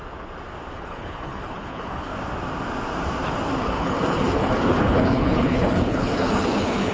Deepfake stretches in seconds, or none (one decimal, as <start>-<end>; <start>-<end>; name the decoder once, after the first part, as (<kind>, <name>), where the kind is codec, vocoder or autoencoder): 0.7-2.1 (codec, HILCodec); 3.6-6.9